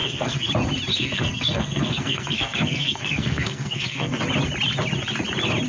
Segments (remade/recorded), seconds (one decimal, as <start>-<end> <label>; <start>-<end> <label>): 0.0-0.5 remade; 0.5-0.9 recorded; 0.9-4.2 remade; 4.2-5.7 recorded